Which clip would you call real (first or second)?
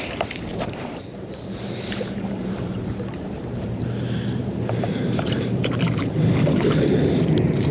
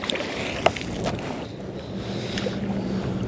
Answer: second